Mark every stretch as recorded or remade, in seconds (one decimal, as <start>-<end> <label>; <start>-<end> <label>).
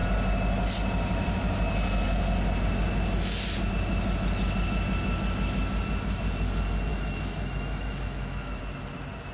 0.0-6.9 recorded; 6.9-8.6 remade; 8.6-9.3 recorded